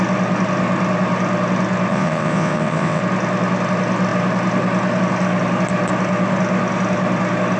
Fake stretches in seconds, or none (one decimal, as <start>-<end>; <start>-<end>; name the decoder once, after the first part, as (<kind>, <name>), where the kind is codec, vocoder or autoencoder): 1.9-3.0 (vocoder, WaveNeXt)